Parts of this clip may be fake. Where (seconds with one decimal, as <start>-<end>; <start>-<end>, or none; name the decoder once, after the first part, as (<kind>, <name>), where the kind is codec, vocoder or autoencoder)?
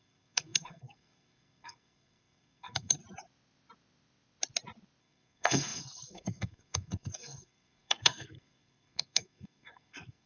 0.0-3.0 (codec, SNAC); 5.0-10.3